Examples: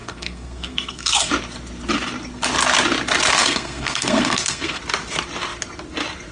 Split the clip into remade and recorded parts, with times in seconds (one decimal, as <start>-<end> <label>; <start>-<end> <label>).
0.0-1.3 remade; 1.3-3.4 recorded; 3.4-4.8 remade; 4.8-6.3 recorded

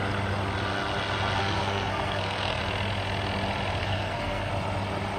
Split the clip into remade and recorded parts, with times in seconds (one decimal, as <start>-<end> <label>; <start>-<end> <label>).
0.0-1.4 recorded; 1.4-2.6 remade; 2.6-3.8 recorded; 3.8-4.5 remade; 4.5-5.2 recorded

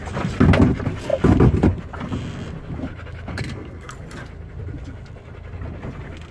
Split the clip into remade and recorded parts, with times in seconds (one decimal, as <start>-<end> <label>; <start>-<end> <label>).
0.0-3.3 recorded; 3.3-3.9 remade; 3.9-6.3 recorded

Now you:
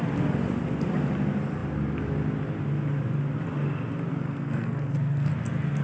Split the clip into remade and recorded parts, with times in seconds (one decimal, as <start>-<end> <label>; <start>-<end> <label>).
0.0-4.1 recorded; 4.1-5.3 remade; 5.3-5.8 recorded